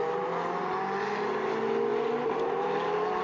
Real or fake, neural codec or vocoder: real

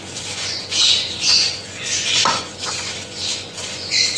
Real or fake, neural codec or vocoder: fake, vocoder, Vocos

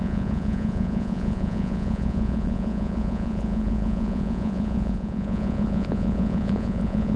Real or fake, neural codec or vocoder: fake, vocoder, Vocos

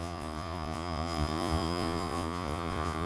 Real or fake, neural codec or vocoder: fake, vocoder, Vocos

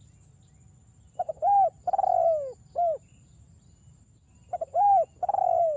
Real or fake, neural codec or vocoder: real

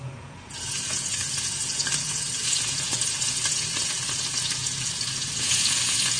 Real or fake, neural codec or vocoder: fake, vocoder, Vocos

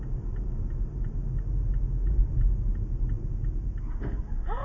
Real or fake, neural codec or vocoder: real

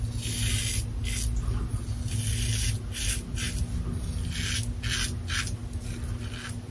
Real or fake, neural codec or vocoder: real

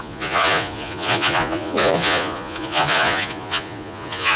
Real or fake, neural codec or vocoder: fake, vocoder, Vocos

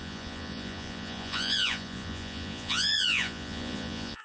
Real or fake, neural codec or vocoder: fake, vocoder, Vocos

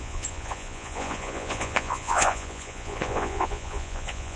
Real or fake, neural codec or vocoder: fake, vocoder, Vocos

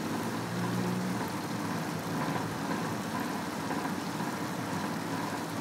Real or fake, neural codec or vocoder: real